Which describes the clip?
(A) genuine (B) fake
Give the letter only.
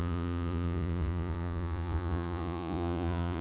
B